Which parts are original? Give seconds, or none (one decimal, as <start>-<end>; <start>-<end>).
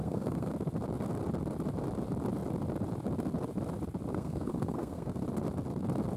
0.5-4.1; 5.2-6.2